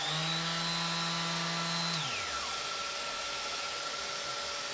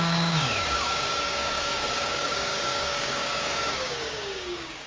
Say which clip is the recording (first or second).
first